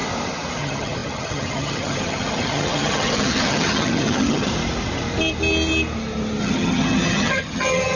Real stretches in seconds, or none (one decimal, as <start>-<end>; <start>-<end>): 0.0-0.6; 4.5-6.4

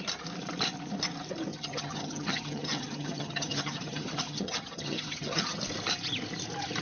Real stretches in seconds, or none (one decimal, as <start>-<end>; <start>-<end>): 0.0-1.5; 5.6-6.8

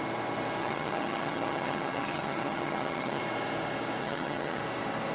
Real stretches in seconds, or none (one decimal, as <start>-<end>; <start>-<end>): 0.0-0.6; 3.2-4.0; 4.6-5.1